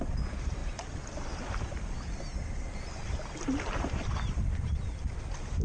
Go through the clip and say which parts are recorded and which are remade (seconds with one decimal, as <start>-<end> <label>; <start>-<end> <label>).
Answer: 0.0-5.6 recorded